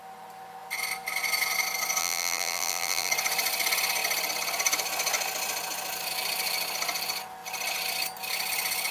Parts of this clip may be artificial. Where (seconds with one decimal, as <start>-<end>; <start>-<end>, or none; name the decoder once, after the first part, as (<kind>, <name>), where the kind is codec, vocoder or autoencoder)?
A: 2.0-3.1 (vocoder, BigVGAN v2)